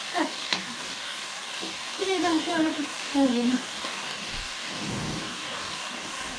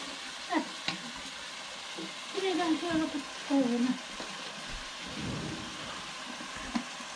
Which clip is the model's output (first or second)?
first